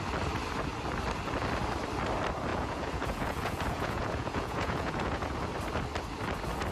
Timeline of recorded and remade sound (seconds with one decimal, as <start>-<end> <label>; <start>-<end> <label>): 0.0-2.5 recorded; 2.5-5.5 remade; 5.5-6.7 recorded

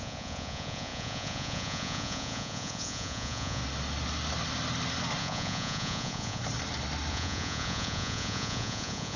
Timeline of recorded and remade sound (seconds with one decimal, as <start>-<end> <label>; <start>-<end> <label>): 0.0-3.6 remade; 3.6-5.2 recorded; 5.2-6.4 remade; 6.4-7.1 recorded; 7.1-9.2 remade

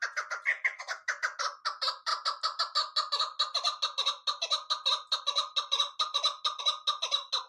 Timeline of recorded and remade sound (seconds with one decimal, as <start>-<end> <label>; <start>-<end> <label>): 0.0-7.5 recorded

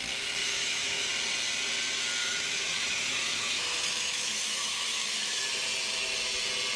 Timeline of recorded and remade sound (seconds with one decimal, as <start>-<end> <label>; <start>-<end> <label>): 0.0-0.4 recorded; 0.4-1.1 remade; 1.1-2.2 recorded; 2.2-5.4 remade; 5.4-6.8 recorded

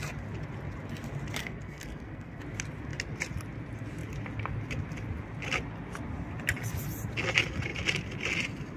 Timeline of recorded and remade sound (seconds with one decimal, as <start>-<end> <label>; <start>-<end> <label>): 0.0-1.4 recorded; 1.4-2.4 remade; 2.4-8.8 recorded

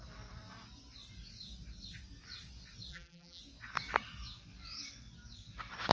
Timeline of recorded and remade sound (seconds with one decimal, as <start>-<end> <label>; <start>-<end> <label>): 0.0-2.9 recorded; 2.9-3.4 remade; 3.4-5.9 recorded